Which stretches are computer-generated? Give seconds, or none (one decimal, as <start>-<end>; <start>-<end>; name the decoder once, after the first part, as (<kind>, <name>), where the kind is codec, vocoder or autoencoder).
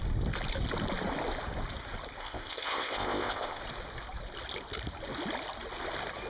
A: 2.2-3.6 (codec, ZipCodec)